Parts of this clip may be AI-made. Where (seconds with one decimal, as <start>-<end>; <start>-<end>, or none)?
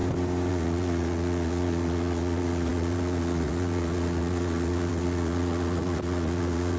0.5-6.8